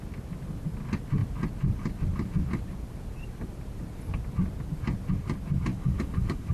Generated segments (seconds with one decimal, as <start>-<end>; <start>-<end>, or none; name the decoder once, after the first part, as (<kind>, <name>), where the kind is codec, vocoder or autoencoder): 5.7-6.5 (codec, DAC)